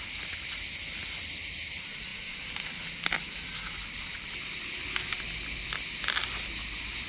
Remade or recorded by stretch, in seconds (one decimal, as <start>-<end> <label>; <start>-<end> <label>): 0.0-7.1 recorded